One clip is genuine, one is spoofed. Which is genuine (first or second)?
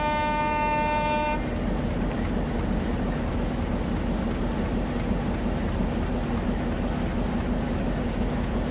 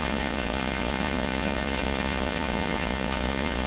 first